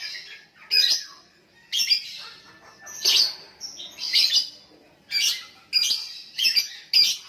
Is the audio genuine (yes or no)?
yes